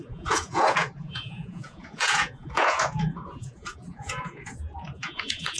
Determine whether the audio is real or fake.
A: fake